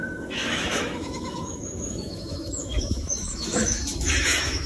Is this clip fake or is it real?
fake